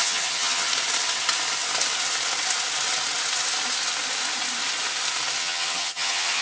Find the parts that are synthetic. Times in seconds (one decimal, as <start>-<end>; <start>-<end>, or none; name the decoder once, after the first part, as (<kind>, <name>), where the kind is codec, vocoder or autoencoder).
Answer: 0.0-0.7 (vocoder, HiFi-GAN); 5.4-6.4